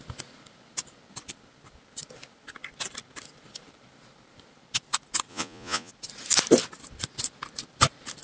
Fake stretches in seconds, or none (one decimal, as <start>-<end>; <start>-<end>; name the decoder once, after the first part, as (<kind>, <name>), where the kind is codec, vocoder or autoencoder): 5.3-5.9 (vocoder, Vocos)